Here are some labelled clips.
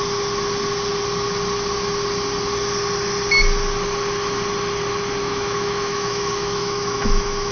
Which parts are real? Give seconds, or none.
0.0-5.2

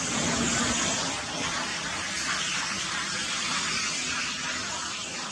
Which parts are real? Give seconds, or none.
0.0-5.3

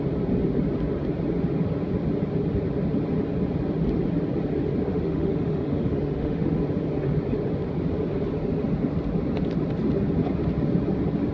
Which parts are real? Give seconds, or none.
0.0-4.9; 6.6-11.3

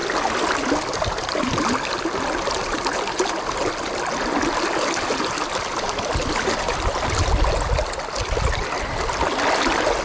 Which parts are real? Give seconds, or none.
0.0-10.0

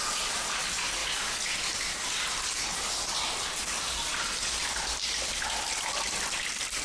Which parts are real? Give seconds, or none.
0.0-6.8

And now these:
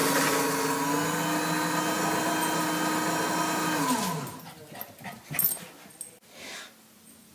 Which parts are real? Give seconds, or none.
0.0-7.3

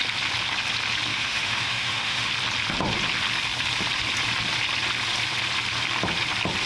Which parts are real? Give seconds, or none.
0.0-1.1; 2.3-6.7

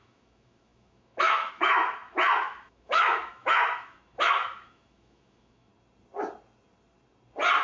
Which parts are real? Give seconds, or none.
5.7-7.6